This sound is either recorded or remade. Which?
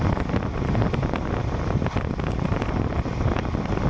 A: recorded